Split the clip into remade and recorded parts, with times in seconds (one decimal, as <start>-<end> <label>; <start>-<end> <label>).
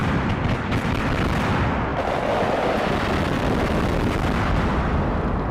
0.0-0.7 remade; 0.7-5.5 recorded